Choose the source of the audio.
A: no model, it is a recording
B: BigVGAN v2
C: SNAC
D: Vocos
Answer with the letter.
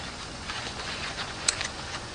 D